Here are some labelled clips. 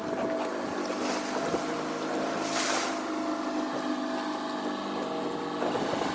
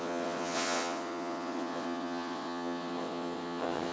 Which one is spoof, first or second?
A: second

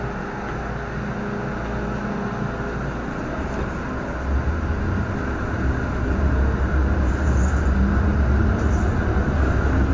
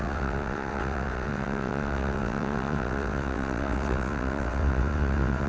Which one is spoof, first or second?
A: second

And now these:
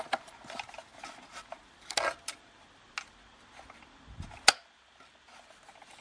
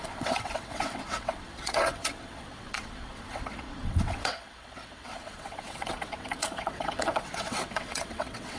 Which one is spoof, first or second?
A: second